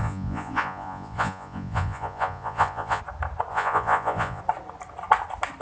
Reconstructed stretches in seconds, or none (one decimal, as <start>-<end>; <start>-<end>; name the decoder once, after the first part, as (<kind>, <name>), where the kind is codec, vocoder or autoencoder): 0.0-3.0 (vocoder, Vocos); 3.5-4.4